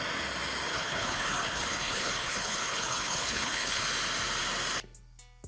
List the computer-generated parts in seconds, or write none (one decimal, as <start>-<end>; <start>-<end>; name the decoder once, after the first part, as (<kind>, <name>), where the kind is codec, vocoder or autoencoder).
0.7-3.8 (codec, HILCodec)